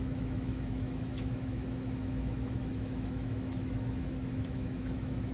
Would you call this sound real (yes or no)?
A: no